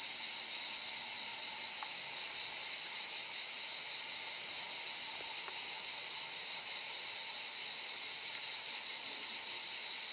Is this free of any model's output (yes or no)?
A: yes